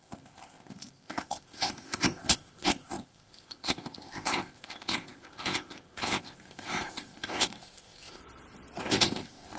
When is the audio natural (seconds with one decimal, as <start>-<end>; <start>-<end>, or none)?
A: 8.2-8.8

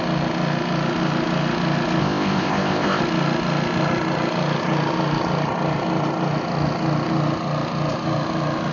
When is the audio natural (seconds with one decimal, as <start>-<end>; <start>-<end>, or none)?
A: 0.0-2.0; 3.0-8.7

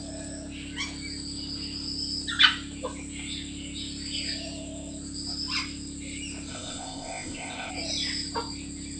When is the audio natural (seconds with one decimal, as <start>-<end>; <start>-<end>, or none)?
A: 0.0-6.5; 7.7-9.0

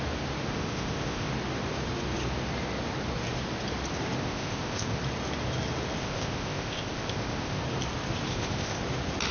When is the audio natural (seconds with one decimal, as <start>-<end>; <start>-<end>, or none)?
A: 0.0-0.5; 1.3-4.2; 5.0-6.0; 7.6-8.3; 8.8-9.3

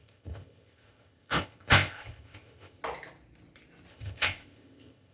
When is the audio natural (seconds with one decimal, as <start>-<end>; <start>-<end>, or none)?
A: 2.8-3.9

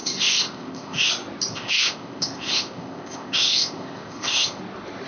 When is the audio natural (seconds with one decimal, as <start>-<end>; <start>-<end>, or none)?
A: 1.1-1.5; 4.6-5.1